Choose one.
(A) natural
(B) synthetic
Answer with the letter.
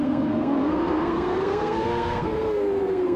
B